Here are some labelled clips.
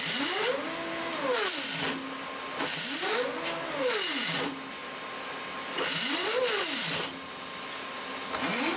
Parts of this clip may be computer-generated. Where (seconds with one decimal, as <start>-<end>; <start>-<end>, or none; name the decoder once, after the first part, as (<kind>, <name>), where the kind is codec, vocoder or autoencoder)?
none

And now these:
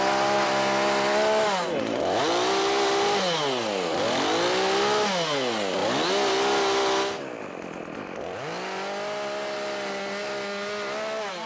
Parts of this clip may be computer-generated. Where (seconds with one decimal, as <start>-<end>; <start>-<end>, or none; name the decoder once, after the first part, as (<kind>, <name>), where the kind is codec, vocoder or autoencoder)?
none

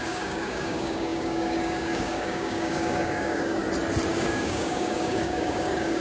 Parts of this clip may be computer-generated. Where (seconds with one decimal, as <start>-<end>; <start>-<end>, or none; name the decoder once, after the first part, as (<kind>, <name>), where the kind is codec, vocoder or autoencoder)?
0.0-3.6 (codec, DAC); 4.1-6.0

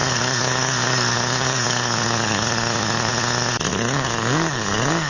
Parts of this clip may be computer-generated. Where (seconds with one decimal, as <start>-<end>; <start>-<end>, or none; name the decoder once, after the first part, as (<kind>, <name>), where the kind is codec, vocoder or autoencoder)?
0.0-3.1 (codec, DAC); 3.7-5.1

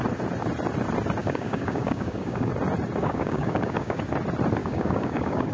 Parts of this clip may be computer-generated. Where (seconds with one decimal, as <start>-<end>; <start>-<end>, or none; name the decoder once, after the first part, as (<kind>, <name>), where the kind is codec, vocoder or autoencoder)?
1.2-2.5 (codec, DAC); 3.0-4.0; 4.6-5.5

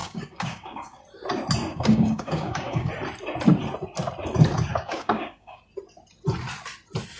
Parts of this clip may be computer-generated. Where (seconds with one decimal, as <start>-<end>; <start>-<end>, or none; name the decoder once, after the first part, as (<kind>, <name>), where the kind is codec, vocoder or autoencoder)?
0.0-1.0 (codec, DAC); 1.7-2.9; 4.7-5.6

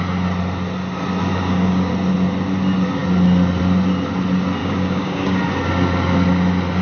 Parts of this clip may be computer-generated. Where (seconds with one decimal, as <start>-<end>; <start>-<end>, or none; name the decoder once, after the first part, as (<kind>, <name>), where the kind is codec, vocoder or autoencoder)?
1.3-1.9 (codec, DAC); 4.6-5.4